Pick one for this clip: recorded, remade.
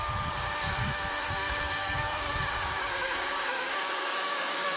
remade